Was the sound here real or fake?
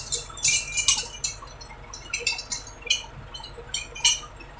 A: real